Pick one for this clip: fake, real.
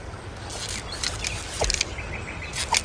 real